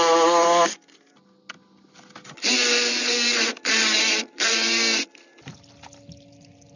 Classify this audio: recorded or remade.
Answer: recorded